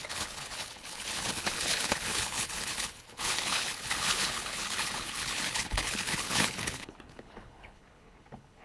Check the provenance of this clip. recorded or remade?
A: remade